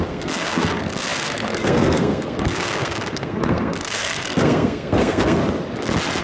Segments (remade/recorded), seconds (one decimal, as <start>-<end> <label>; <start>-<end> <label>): 0.0-5.4 remade; 5.4-6.2 recorded

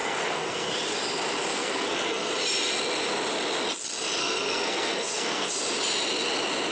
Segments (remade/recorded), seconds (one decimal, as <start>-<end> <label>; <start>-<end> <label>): 0.0-0.7 remade; 0.7-1.5 recorded; 1.5-2.3 remade; 2.3-4.2 recorded; 4.2-5.5 remade; 5.5-6.7 recorded

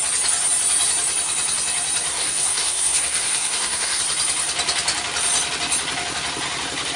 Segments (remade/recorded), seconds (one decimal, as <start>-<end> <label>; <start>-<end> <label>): 0.0-2.1 recorded; 2.1-4.0 remade; 4.0-7.0 recorded

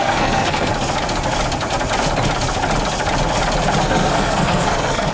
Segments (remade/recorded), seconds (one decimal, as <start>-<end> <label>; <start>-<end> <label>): 0.0-0.7 remade; 0.7-3.8 recorded; 3.8-5.1 remade

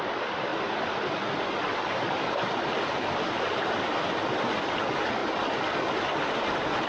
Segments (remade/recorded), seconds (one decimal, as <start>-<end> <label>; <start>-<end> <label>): 0.0-6.9 recorded

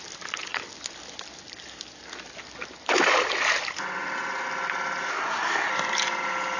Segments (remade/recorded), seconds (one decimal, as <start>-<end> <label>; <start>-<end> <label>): 0.0-5.1 recorded; 5.1-5.7 remade; 5.7-6.6 recorded

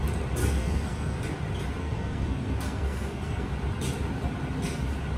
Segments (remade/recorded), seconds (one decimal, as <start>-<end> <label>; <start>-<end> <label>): 0.0-0.4 recorded; 0.4-1.2 remade; 1.2-1.8 recorded; 1.8-3.5 remade; 3.5-5.2 recorded

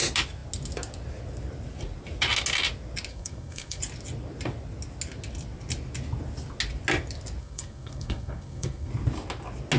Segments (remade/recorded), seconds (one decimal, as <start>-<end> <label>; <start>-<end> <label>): 0.0-3.1 recorded; 3.1-3.8 remade; 3.8-7.4 recorded; 7.4-8.9 remade; 8.9-9.8 recorded